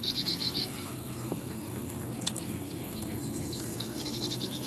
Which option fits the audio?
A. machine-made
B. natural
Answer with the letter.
A